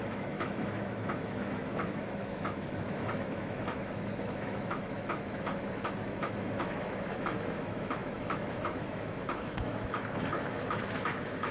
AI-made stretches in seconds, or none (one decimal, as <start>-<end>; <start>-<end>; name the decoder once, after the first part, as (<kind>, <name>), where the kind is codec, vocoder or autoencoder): 0.0-11.5 (autoencoder, DAC-VAE)